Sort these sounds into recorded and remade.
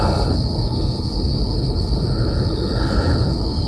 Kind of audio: remade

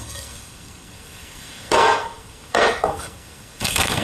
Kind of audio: remade